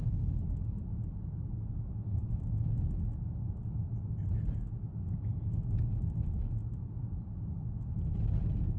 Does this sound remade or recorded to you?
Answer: recorded